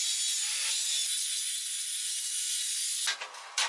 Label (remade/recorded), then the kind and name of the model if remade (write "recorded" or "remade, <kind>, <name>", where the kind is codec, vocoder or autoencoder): recorded